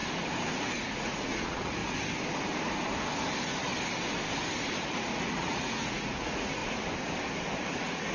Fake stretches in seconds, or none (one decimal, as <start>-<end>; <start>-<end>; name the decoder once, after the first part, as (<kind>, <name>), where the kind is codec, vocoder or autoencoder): 0.8-1.8 (vocoder, Vocos); 4.7-6.6; 7.6-8.1